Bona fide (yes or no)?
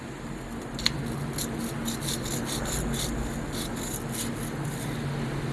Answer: yes